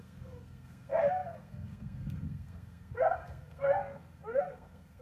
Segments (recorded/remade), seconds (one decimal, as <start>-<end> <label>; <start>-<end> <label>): 0.0-5.0 remade